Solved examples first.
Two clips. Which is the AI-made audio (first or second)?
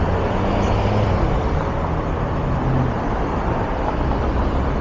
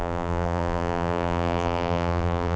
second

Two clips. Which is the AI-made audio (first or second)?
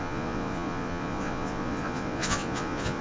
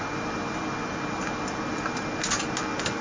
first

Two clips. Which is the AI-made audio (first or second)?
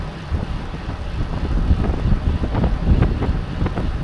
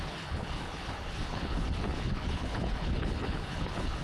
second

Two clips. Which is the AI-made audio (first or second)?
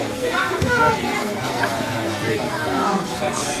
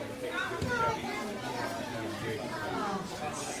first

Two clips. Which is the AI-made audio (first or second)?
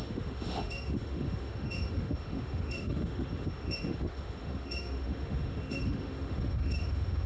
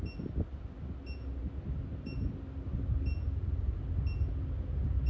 first